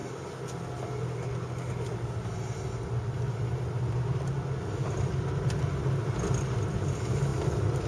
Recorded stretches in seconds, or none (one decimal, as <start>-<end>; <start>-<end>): 0.0-7.9